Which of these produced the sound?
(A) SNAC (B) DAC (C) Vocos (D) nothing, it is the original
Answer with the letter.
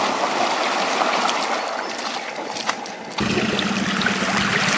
D